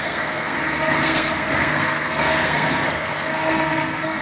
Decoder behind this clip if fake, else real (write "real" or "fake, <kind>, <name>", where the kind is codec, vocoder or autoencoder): fake, codec, SNAC